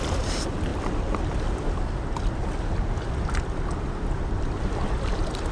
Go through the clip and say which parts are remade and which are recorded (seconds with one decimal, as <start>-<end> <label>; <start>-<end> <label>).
0.0-5.5 recorded